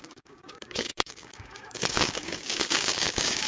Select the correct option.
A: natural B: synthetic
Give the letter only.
B